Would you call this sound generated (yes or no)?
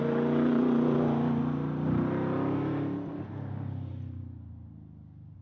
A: no